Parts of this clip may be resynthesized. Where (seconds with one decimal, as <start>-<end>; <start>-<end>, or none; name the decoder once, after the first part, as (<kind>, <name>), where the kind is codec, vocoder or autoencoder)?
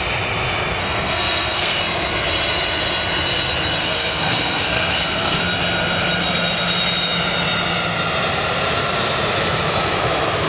0.8-1.8 (codec, SNAC); 3.8-5.4